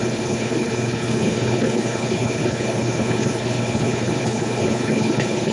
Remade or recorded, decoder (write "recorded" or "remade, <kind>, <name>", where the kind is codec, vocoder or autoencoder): remade, codec, HILCodec